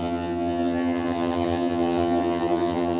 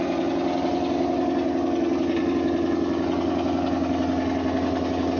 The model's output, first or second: first